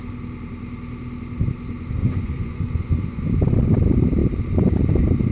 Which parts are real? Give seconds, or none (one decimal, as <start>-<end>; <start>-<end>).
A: 0.0-2.0; 3.3-5.3